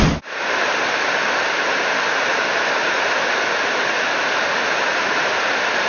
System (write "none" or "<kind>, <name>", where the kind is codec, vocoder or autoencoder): vocoder, BigVGAN v2